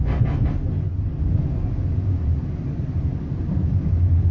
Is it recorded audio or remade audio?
recorded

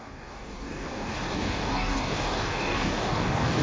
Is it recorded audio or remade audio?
remade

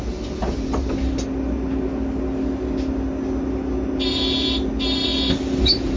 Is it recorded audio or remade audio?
recorded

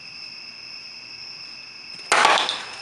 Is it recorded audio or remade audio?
recorded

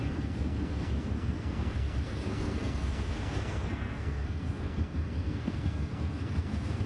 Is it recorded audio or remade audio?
remade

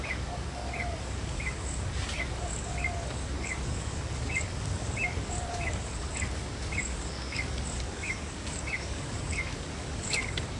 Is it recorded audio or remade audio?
remade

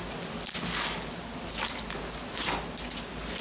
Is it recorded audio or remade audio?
recorded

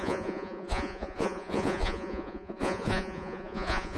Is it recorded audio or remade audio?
remade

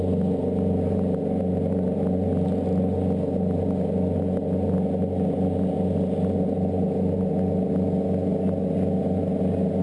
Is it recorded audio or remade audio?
recorded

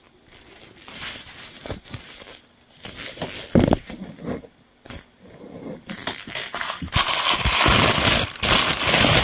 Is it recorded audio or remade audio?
recorded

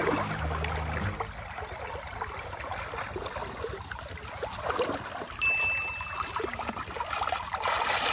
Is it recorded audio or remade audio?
recorded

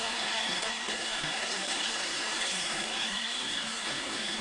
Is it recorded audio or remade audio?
remade